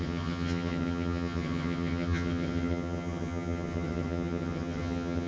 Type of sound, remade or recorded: remade